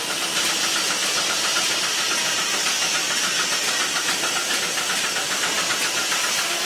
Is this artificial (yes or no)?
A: yes